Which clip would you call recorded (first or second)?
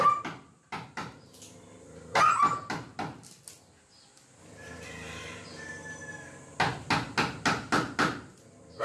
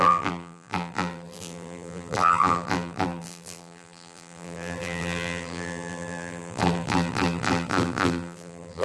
first